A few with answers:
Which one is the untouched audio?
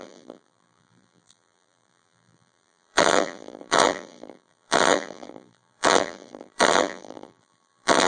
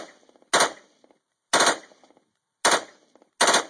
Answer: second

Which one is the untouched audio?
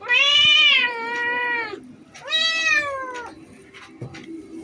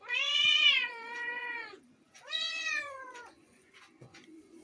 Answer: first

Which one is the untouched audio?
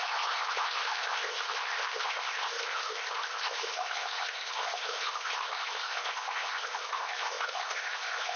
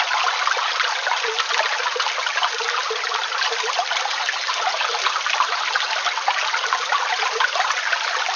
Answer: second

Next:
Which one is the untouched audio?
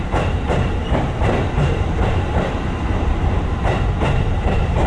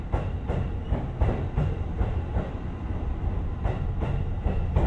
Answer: second